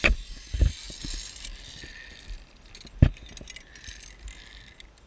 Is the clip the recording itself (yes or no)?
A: yes